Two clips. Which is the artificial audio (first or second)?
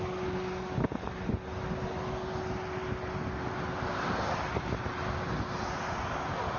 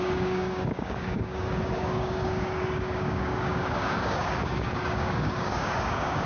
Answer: second